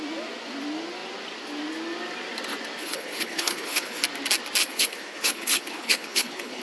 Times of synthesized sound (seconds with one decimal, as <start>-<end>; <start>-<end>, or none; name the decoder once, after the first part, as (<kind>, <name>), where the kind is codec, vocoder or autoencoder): 2.8-4.0 (codec, HILCodec); 4.6-6.6